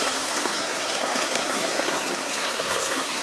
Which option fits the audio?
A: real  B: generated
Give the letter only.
B